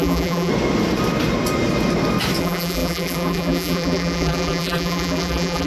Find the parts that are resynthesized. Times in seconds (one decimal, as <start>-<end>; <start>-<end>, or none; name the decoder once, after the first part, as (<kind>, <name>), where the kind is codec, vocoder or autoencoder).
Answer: 0.0-0.5 (vocoder, BigVGAN v2); 2.4-5.7